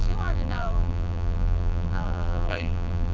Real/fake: fake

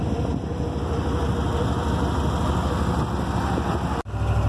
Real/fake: real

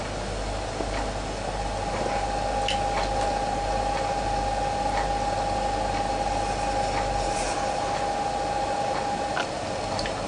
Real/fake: real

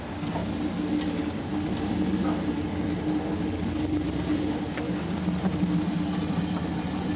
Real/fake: real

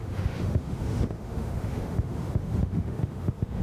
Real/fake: fake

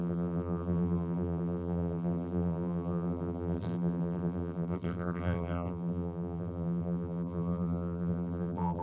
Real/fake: fake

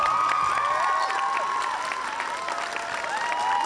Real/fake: real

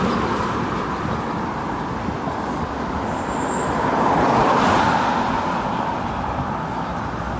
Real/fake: real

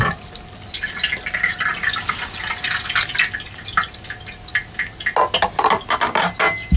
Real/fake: real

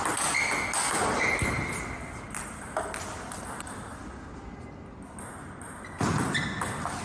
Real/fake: real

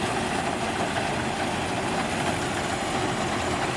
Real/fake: real